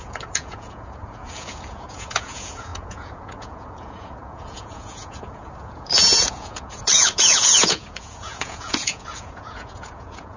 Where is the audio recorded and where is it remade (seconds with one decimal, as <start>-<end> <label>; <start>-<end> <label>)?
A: 0.0-10.4 remade